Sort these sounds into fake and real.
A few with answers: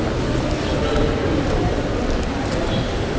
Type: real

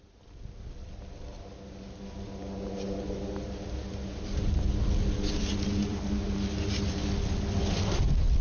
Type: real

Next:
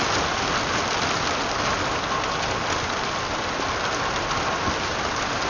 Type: real